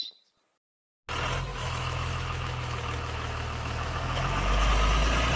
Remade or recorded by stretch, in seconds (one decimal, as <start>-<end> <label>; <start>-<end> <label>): 0.0-1.5 recorded; 1.5-4.7 remade; 4.7-5.4 recorded